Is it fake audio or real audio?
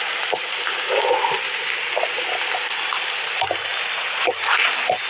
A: real